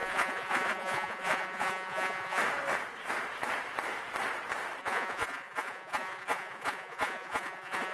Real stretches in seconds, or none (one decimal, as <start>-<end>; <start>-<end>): 2.4-4.8